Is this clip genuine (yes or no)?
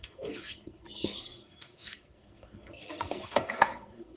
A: no